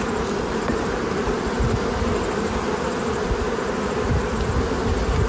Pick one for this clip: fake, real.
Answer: real